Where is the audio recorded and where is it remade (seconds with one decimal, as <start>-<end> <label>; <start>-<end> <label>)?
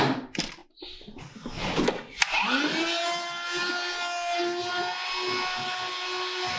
0.0-6.6 recorded